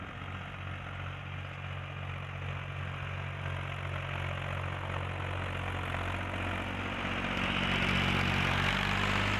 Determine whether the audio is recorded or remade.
recorded